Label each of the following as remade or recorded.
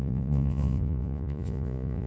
remade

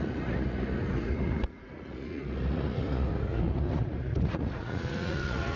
remade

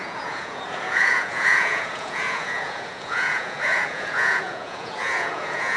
remade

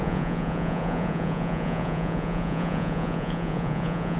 remade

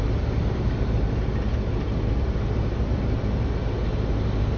recorded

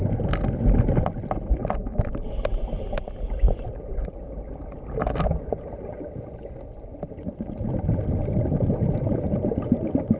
recorded